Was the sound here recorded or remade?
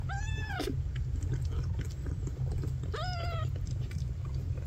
recorded